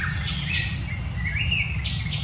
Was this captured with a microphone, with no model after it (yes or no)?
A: yes